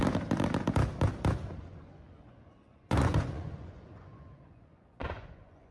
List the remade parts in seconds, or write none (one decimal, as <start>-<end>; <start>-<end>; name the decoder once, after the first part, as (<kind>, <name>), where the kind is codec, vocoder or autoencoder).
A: 1.6-5.7 (vocoder, Vocos)